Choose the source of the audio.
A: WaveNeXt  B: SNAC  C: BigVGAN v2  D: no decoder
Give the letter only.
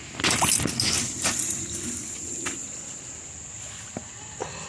D